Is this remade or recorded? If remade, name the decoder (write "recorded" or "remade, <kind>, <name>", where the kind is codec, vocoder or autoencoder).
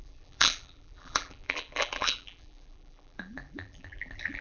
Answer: remade, vocoder, BigVGAN v2